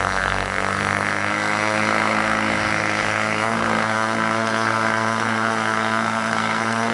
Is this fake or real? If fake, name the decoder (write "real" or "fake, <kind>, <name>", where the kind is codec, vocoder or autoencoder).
fake, codec, SNAC